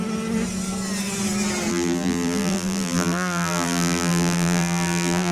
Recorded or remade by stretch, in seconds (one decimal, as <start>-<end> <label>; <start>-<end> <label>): 0.0-1.7 recorded; 1.7-5.3 remade